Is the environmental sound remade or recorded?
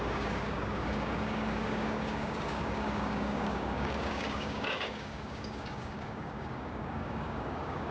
remade